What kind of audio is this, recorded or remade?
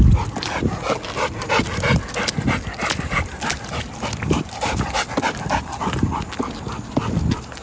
recorded